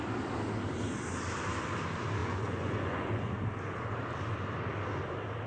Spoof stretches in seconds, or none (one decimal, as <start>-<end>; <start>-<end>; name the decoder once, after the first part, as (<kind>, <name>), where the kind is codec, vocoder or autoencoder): 2.2-3.3 (vocoder, Vocos)